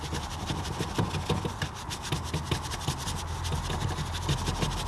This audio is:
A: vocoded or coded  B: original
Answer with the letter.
B